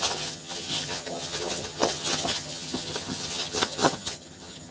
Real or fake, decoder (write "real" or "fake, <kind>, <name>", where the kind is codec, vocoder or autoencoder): fake, vocoder, HiFi-GAN